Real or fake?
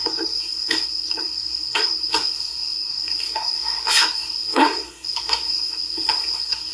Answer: fake